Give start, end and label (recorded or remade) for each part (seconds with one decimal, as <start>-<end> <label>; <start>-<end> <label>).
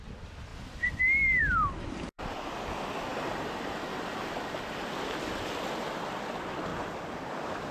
0.0-0.5 recorded; 0.5-2.3 remade; 2.3-3.1 recorded; 3.1-4.9 remade; 4.9-7.7 recorded